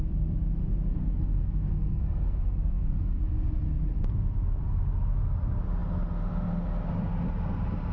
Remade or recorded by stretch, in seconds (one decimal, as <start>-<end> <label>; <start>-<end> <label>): 0.0-0.9 recorded; 0.9-3.2 remade; 3.2-7.9 recorded

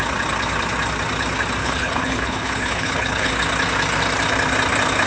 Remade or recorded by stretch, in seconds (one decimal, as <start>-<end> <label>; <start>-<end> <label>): 0.0-1.6 recorded; 1.6-3.3 remade; 3.3-5.1 recorded

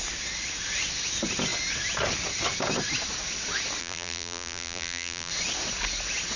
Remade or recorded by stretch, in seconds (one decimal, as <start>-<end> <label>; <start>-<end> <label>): 0.0-3.8 recorded; 3.8-5.3 remade; 5.3-6.4 recorded

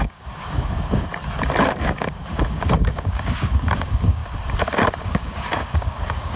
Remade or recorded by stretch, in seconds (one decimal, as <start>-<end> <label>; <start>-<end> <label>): 0.0-1.1 remade; 1.1-1.8 recorded; 1.8-4.2 remade; 4.2-5.0 recorded; 5.0-6.4 remade